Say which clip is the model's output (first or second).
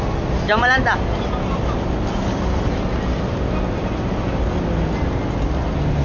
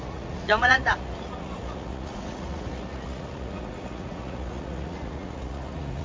second